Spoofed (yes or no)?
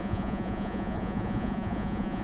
yes